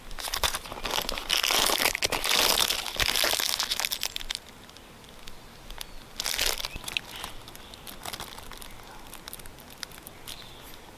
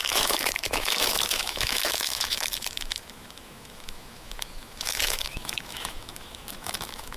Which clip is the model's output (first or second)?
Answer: second